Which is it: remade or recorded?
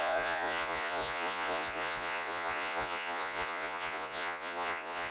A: remade